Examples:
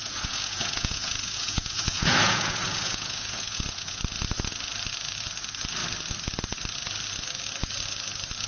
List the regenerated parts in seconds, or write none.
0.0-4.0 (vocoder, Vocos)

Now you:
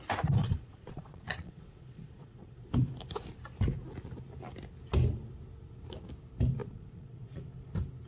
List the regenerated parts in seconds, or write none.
0.4-2.6 (vocoder, Vocos); 6.6-7.4